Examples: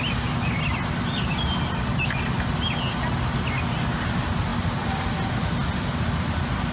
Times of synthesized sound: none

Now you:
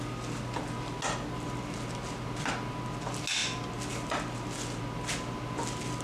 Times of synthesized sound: none

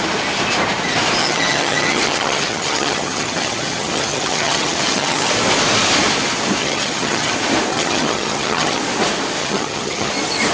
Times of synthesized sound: 1.2-5.3 (vocoder, HiFi-GAN); 6.6-7.3; 7.7-8.8; 9.4-10.1

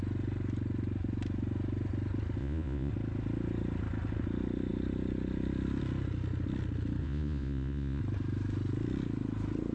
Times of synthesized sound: 2.4-2.9 (vocoder, Vocos); 7.0-8.0